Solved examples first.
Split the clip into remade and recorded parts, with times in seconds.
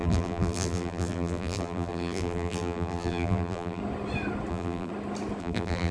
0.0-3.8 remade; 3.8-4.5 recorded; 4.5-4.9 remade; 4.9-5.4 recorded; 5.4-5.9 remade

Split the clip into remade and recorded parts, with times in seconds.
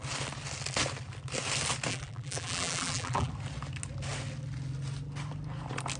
0.0-1.9 recorded; 1.9-3.3 remade; 3.3-6.0 recorded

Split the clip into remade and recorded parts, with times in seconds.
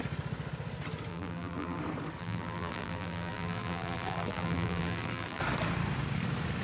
0.0-1.1 recorded; 1.1-1.8 remade; 1.8-2.2 recorded; 2.2-5.4 remade; 5.4-6.6 recorded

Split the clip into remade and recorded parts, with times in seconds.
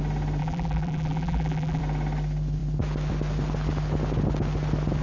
0.0-0.4 recorded; 0.4-1.8 remade; 1.8-5.0 recorded